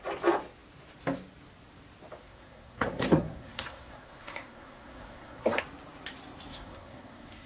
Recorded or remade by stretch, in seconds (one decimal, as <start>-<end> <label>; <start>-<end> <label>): 0.0-2.2 recorded; 2.2-5.6 remade; 5.6-6.5 recorded; 6.5-7.5 remade